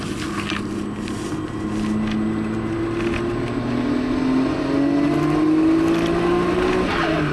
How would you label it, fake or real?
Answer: real